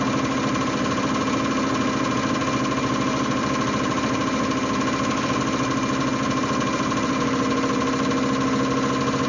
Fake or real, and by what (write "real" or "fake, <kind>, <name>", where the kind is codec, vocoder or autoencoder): real